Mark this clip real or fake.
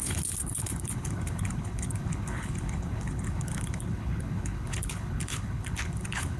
fake